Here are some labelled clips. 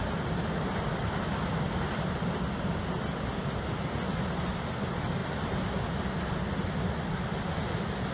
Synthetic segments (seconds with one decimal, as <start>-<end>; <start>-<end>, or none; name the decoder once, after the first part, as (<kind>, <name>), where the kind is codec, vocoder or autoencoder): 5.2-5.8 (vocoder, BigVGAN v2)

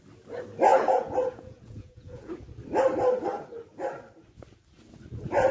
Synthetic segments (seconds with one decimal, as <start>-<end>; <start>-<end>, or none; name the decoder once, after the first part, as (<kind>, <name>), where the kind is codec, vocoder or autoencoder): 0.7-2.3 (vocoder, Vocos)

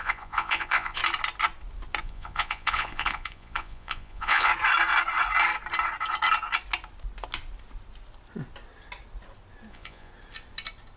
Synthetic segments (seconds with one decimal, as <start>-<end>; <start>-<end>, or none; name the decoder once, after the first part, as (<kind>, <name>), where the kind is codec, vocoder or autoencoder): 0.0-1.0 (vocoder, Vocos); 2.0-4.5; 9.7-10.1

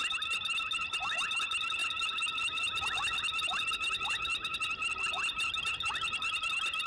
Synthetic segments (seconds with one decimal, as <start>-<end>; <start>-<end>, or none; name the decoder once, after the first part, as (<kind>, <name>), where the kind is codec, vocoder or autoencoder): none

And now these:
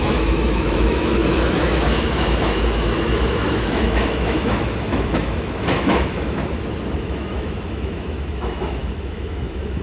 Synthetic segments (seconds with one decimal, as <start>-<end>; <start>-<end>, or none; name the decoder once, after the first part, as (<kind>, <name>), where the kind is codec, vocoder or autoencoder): 0.0-6.4 (autoencoder, DAC-VAE); 7.0-9.8